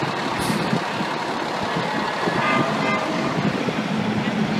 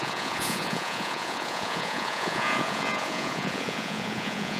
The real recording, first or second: first